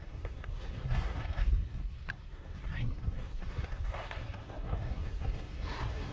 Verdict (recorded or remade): remade